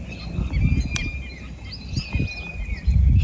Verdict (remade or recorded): recorded